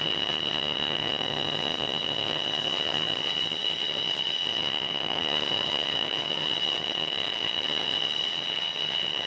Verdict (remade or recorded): remade